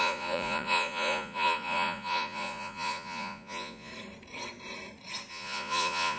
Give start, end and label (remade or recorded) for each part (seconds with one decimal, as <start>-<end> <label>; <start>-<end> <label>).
0.0-3.9 remade; 3.9-5.3 recorded; 5.3-6.2 remade